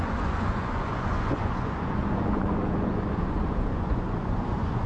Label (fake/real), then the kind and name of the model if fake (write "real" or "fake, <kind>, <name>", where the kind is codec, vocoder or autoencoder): fake, vocoder, Vocos